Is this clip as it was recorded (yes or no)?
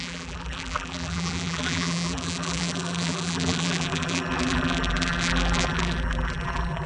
no